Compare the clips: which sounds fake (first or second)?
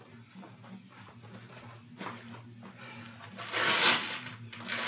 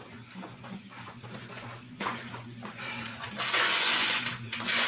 second